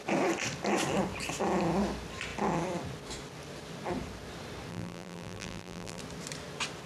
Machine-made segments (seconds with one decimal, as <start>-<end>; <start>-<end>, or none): 4.7-6.0